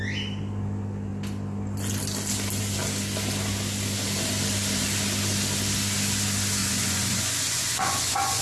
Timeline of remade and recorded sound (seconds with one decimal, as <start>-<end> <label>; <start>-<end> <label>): 0.0-6.6 recorded; 6.6-8.4 remade